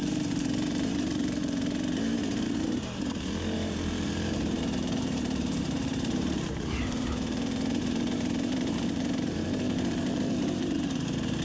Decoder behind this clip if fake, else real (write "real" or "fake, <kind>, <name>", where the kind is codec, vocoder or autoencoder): fake, vocoder, BigVGAN v2